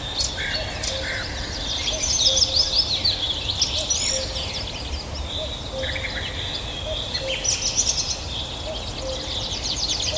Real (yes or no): yes